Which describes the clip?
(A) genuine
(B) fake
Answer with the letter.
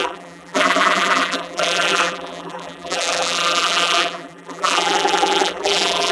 B